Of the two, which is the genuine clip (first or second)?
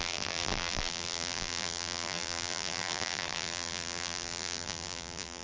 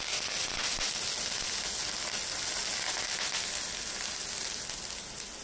second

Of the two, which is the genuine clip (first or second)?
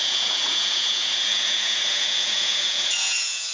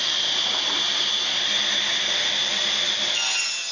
second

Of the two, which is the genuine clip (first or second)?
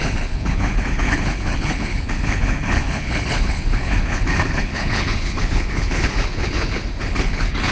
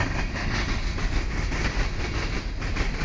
second